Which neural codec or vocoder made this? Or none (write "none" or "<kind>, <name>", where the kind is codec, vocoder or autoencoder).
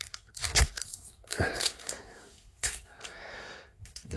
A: codec, SNAC